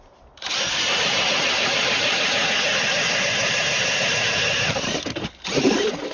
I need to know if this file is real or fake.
fake